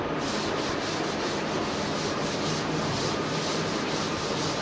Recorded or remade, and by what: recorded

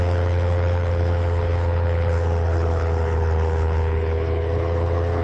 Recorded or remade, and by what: remade, codec, HILCodec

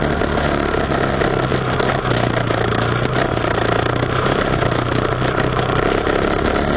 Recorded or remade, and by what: recorded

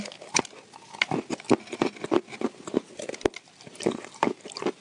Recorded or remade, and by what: recorded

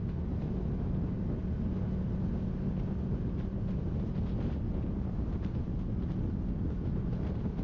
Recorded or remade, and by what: recorded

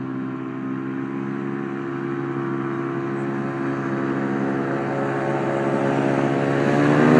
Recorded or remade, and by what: recorded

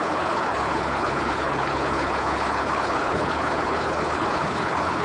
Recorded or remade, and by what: remade, codec, HILCodec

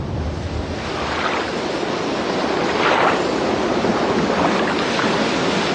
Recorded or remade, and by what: recorded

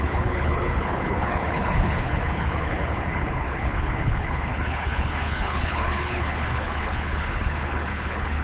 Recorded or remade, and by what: remade, codec, HILCodec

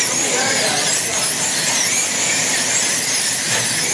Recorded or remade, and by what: recorded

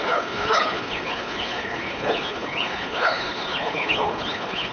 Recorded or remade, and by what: remade, codec, HILCodec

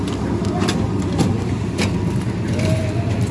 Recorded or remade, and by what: recorded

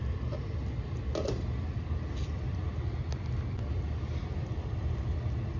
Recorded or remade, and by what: recorded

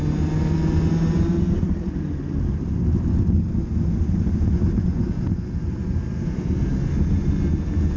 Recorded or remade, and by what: recorded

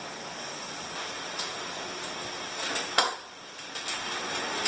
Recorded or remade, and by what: recorded